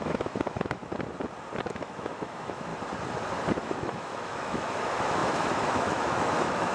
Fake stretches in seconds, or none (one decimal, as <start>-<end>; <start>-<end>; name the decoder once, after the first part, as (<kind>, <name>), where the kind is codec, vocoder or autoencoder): 0.0-0.8 (autoencoder, DAC-VAE); 1.7-2.7; 3.5-6.7